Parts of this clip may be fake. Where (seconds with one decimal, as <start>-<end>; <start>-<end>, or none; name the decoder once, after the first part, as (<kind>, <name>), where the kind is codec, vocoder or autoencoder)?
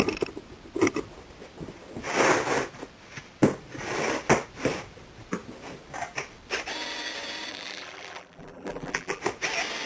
7.5-9.2 (vocoder, BigVGAN v2)